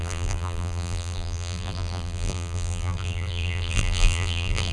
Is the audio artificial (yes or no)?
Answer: yes